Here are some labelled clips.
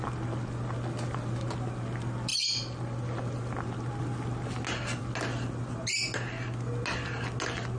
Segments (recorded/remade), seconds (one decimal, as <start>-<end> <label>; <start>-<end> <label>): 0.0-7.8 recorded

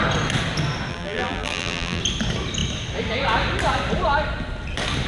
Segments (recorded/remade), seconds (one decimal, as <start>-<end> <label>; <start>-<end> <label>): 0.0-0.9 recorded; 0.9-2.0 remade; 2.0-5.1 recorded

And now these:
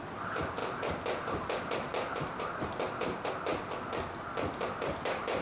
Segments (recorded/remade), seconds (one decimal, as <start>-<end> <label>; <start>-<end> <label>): 0.0-3.5 remade; 3.5-4.8 recorded; 4.8-5.4 remade

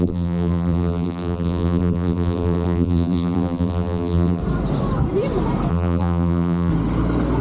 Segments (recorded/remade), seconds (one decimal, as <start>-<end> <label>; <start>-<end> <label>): 0.0-4.4 remade; 4.4-5.7 recorded; 5.7-6.7 remade; 6.7-7.4 recorded

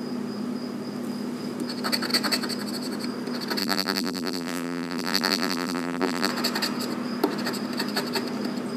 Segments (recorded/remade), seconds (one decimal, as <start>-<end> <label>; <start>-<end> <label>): 0.0-3.6 recorded; 3.6-6.3 remade; 6.3-8.8 recorded

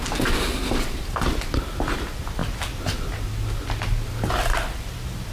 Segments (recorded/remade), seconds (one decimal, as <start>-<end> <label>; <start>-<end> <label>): 0.0-2.4 remade; 2.4-3.0 recorded; 3.0-5.3 remade